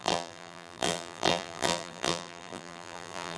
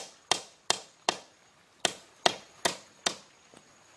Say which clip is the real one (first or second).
second